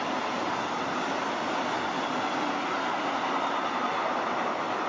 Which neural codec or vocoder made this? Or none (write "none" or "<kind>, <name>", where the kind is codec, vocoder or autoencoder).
none